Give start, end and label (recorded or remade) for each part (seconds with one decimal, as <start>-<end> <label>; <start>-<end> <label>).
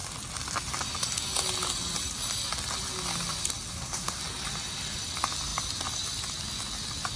0.0-3.7 recorded; 3.7-4.2 remade; 4.2-7.2 recorded